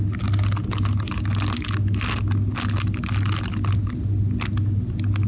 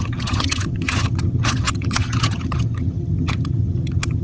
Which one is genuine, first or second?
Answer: first